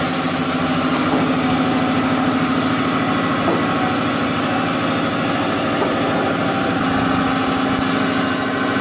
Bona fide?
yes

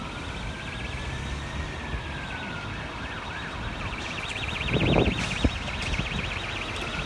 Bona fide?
yes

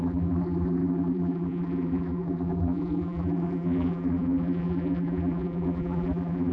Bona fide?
no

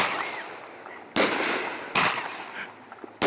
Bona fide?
yes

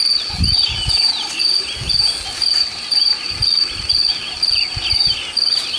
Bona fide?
yes